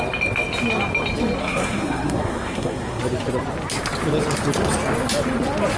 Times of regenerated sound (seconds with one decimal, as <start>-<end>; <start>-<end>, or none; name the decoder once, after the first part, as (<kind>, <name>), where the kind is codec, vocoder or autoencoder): 1.4-3.0 (codec, SNAC)